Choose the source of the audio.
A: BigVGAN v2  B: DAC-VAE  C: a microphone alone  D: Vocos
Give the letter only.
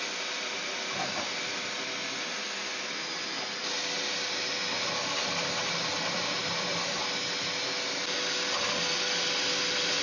C